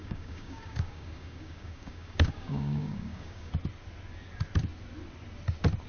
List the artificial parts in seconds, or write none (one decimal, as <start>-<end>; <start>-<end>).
0.0-3.5